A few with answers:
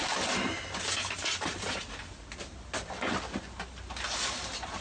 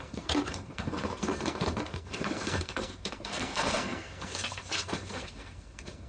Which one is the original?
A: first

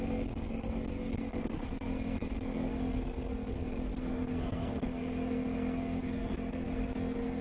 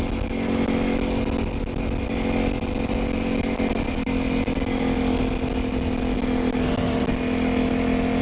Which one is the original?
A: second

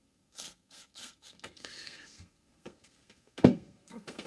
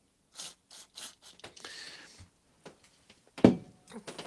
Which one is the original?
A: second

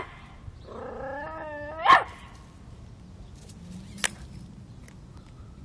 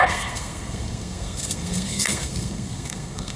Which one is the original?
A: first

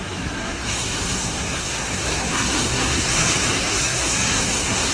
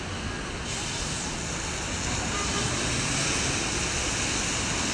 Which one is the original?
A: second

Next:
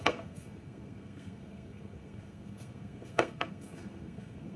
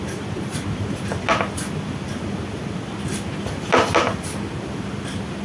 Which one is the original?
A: second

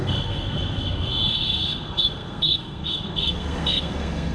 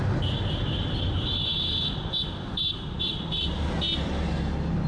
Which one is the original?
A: second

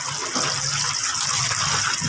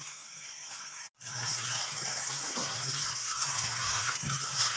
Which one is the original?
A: first